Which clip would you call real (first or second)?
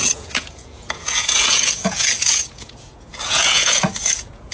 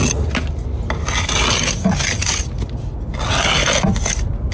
second